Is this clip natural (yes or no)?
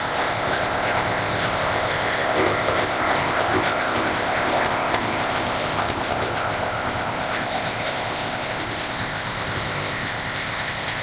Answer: no